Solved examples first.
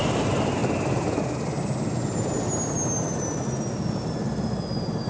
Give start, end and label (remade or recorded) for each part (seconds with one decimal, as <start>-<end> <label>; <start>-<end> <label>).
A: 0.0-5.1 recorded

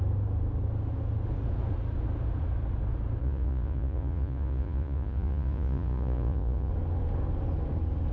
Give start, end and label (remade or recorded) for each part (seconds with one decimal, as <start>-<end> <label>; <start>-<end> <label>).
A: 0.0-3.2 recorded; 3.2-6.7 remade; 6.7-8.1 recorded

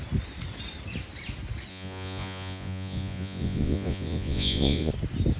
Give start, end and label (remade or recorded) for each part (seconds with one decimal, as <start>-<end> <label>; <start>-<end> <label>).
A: 0.0-1.7 recorded; 1.7-4.9 remade; 4.9-5.4 recorded